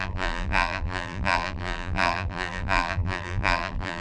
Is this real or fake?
fake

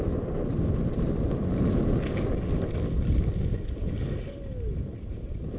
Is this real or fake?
real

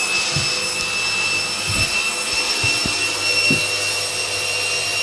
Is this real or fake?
real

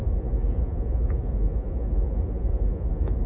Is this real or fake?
fake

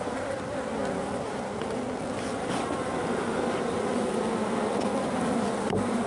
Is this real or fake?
real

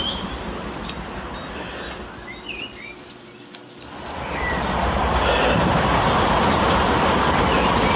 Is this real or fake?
real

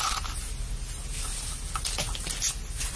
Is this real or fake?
real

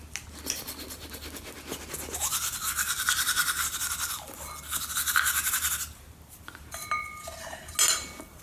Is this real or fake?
real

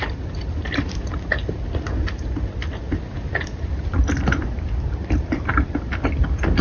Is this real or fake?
fake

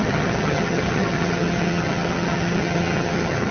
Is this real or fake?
fake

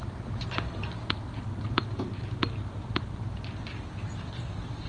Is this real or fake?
real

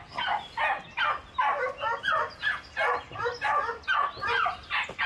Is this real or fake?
real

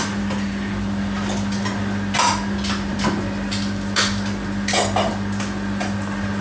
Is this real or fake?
real